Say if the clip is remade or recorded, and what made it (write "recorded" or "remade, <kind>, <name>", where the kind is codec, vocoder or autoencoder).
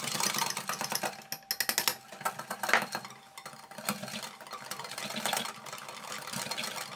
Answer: recorded